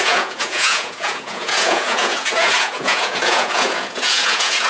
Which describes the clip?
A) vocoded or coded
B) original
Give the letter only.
A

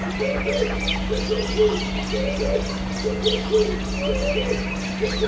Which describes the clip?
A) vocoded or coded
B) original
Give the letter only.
B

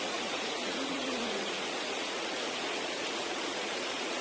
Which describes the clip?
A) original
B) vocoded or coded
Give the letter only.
B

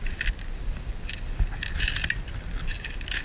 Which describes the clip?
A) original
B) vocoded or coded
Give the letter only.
A